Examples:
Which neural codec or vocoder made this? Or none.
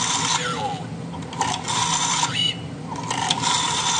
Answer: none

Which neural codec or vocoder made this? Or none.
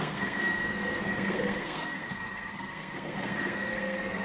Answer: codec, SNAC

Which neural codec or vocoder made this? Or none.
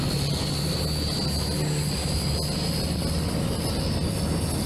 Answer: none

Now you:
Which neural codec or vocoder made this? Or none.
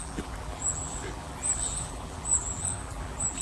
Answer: vocoder, BigVGAN v2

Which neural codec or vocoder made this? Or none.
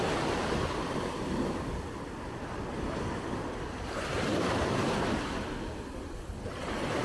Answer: none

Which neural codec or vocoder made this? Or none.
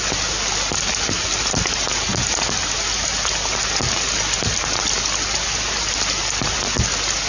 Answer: none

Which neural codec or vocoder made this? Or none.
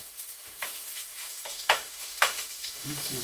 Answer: autoencoder, DAC-VAE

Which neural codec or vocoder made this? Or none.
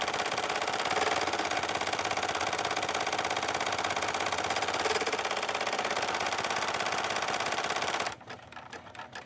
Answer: none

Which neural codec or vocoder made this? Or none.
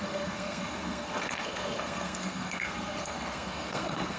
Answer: codec, SNAC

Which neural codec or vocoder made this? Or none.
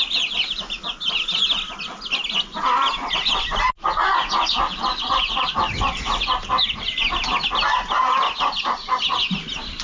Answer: none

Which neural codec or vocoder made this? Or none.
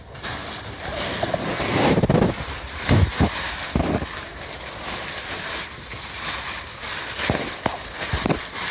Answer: none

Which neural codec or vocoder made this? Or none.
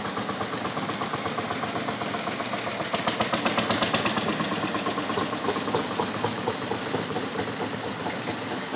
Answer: none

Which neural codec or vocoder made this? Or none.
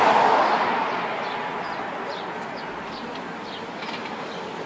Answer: none